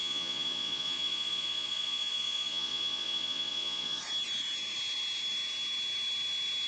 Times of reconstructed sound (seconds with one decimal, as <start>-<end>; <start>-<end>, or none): 0.0-4.0